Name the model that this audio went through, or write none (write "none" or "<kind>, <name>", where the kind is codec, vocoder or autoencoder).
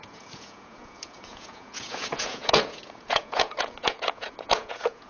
vocoder, Vocos